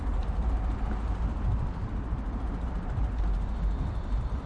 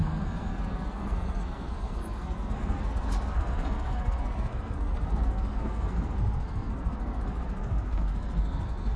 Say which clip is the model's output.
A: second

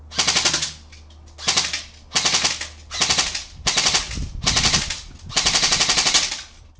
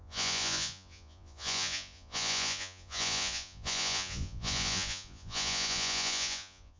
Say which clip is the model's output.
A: second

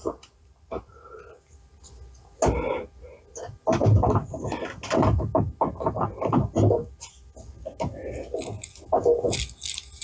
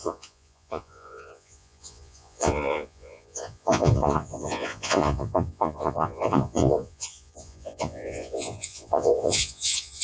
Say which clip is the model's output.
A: second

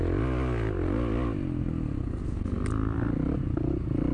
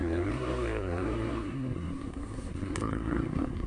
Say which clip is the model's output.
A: second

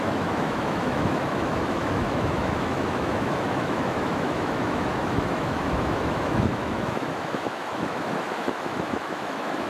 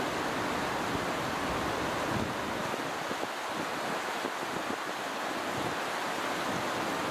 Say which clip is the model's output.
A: first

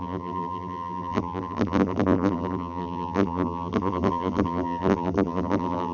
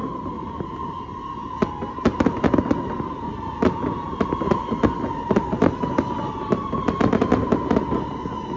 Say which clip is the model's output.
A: first